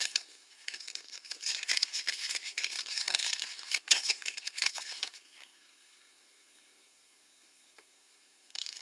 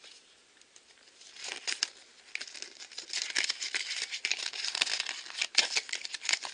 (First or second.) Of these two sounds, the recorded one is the second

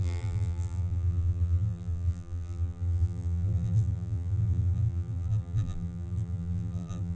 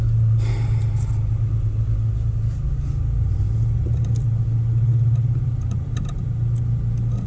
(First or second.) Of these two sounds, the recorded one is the second